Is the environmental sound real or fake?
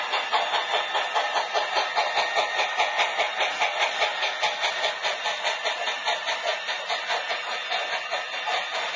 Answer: real